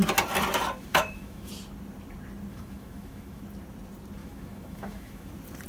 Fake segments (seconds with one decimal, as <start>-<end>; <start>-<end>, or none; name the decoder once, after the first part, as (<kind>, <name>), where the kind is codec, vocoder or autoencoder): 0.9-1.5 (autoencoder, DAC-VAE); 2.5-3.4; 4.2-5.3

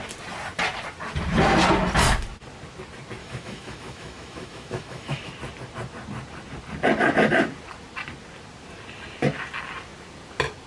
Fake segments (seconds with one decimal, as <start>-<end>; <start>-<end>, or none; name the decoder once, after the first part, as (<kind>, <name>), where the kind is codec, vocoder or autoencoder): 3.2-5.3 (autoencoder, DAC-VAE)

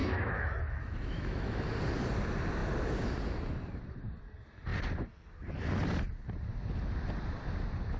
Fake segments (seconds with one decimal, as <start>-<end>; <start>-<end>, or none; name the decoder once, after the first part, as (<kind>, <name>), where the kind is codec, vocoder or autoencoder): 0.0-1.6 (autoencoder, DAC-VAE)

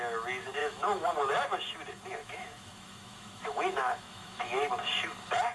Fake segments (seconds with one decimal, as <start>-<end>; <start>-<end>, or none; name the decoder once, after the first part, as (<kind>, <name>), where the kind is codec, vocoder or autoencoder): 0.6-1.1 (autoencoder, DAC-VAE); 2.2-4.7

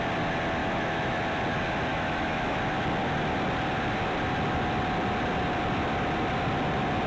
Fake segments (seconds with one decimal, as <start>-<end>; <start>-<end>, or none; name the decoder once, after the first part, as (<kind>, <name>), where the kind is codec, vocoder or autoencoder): 0.6-1.2 (autoencoder, DAC-VAE); 1.9-2.6